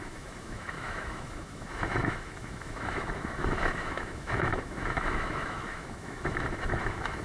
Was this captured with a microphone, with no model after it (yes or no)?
no